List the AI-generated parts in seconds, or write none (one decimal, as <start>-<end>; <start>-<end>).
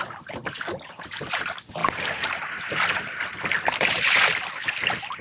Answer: none